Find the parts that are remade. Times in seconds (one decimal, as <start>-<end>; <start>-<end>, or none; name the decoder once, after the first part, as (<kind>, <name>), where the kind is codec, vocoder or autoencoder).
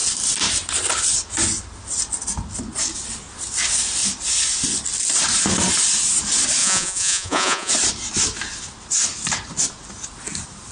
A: 6.6-7.7 (vocoder, Vocos)